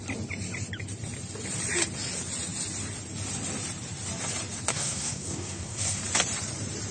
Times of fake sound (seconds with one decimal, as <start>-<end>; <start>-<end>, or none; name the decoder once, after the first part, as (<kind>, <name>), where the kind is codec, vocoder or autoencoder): 4.7-6.0 (codec, SNAC)